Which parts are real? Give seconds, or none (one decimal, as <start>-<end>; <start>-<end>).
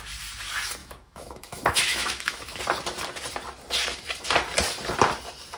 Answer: 0.0-0.8; 2.6-5.6